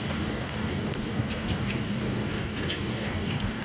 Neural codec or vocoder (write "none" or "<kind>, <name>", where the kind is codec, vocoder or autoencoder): codec, DAC